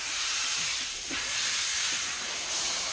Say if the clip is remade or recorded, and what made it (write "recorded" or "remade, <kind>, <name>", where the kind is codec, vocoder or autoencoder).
remade, vocoder, BigVGAN v2